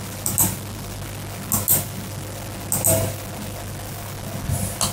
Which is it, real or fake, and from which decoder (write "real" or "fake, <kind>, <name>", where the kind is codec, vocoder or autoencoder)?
real